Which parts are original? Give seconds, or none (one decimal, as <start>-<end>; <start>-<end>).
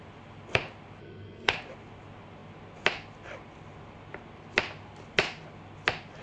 0.0-1.0; 1.5-6.2